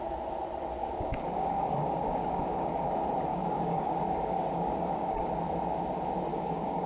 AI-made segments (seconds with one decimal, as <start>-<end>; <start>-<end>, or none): 0.8-2.9; 3.3-5.3; 6.3-6.9